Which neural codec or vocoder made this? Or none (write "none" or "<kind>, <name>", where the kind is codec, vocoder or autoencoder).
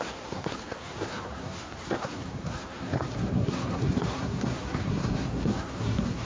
codec, SNAC